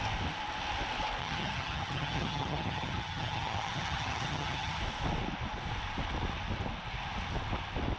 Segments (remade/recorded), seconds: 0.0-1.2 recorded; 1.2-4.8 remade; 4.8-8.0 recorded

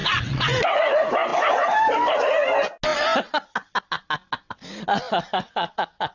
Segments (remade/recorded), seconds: 0.0-0.8 remade; 0.8-5.3 recorded; 5.3-6.1 remade

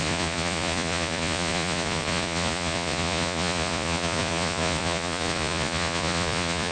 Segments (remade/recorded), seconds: 0.0-6.7 remade